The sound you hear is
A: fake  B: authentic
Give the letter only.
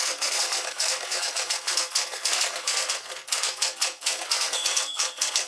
A